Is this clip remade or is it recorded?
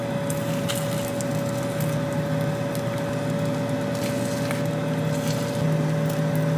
recorded